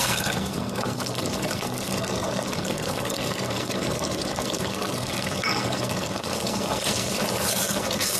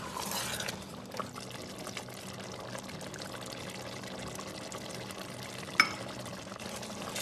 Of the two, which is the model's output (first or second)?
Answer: first